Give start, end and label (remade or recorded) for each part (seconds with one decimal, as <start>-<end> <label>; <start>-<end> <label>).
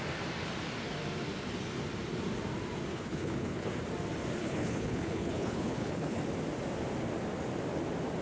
0.0-2.9 recorded; 2.9-3.7 remade; 3.7-4.4 recorded; 4.4-6.2 remade; 6.2-8.2 recorded